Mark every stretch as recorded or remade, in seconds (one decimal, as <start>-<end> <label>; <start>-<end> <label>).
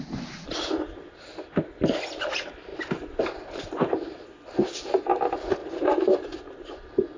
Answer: 0.0-7.2 recorded